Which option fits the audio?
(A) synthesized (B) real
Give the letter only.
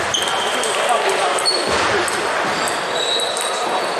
A